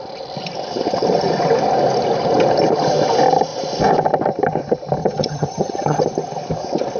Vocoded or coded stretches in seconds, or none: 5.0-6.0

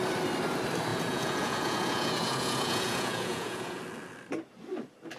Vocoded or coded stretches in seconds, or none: 0.9-3.8

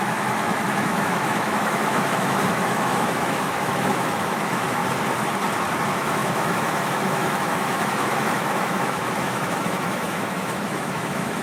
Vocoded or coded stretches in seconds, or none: 0.0-4.8; 5.8-11.4

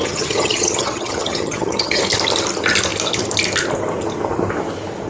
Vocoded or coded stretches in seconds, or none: 0.0-2.0